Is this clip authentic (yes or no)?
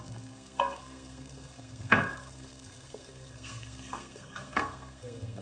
no